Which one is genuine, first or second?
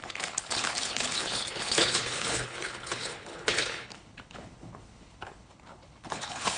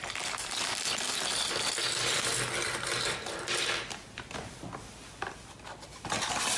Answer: second